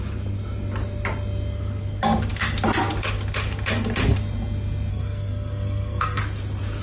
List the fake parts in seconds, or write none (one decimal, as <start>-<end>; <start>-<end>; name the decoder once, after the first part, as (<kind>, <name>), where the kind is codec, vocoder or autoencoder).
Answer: 4.9-6.2 (codec, SNAC)